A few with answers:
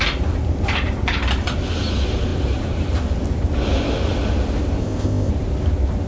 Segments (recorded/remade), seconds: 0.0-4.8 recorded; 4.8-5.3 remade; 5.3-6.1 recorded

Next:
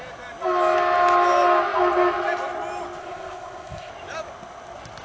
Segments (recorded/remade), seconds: 0.0-3.0 recorded; 3.0-3.9 remade; 3.9-5.0 recorded

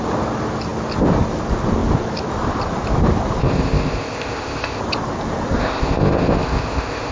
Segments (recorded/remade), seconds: 0.0-3.4 recorded; 3.4-4.8 remade; 4.8-5.6 recorded; 5.6-7.1 remade

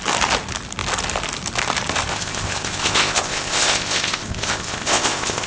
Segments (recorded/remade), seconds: 0.0-2.1 recorded; 2.1-5.5 remade

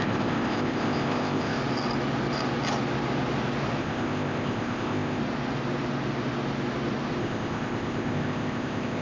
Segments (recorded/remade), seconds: 0.0-1.6 remade; 1.6-3.8 recorded; 3.8-5.2 remade; 5.2-7.2 recorded; 7.2-9.0 remade

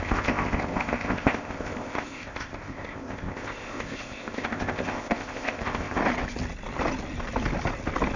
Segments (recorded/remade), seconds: 0.0-6.0 remade; 6.0-8.2 recorded

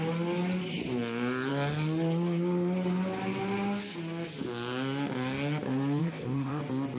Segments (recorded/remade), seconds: 0.0-6.0 recorded; 6.0-6.6 remade; 6.6-7.0 recorded